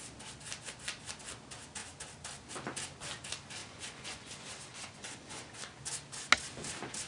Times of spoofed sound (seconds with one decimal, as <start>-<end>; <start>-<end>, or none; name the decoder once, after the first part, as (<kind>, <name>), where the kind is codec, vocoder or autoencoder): 3.6-4.3 (vocoder, Vocos); 4.7-5.6